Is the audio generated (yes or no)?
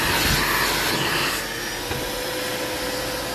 no